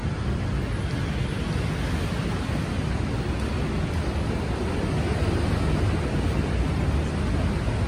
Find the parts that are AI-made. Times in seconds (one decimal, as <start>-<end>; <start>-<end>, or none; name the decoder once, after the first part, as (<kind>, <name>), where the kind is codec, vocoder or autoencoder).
none